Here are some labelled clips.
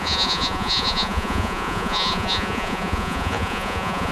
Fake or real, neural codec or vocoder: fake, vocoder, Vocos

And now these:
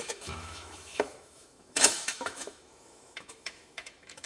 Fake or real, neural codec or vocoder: fake, autoencoder, DAC-VAE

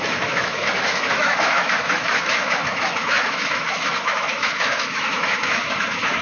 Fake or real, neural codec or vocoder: fake, autoencoder, DAC-VAE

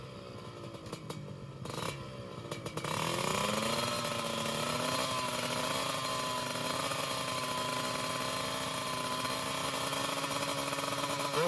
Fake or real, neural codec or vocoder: real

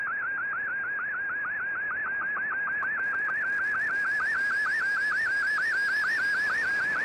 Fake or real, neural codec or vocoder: real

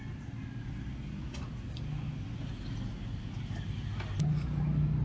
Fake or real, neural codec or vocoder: real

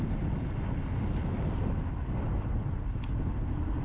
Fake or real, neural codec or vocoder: real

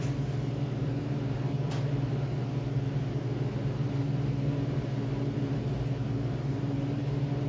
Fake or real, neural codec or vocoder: fake, vocoder, BigVGAN v2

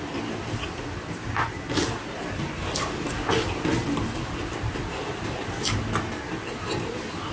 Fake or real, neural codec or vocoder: real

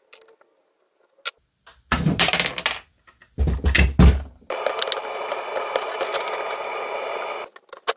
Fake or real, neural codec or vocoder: real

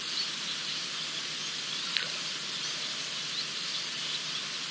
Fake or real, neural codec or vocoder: real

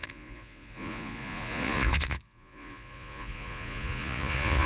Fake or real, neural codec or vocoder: fake, vocoder, Vocos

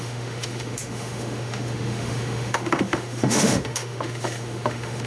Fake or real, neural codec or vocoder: fake, autoencoder, DAC-VAE